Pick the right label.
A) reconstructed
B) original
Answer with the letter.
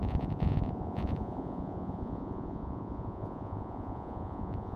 A